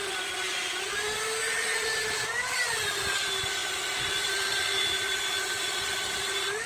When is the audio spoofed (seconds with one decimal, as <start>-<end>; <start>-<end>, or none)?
none